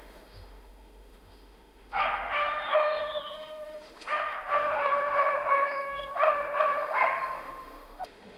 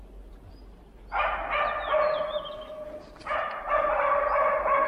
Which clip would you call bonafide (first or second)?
second